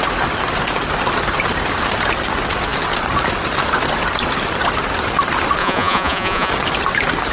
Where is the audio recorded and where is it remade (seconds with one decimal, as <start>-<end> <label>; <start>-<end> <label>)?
0.0-5.6 recorded; 5.6-6.5 remade; 6.5-7.3 recorded